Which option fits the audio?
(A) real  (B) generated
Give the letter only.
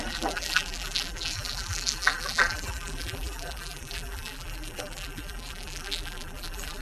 B